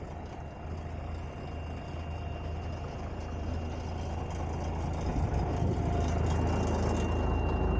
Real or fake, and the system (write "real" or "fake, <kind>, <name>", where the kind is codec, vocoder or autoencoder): real